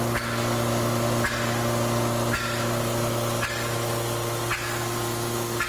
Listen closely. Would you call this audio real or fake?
real